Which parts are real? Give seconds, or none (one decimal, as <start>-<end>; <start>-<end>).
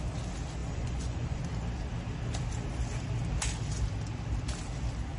0.0-0.6; 1.4-5.2